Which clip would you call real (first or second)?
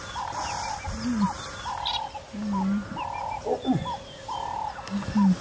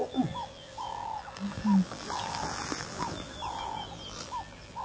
first